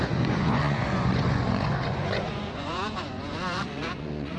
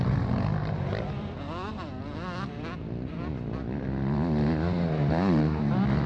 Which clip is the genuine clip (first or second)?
second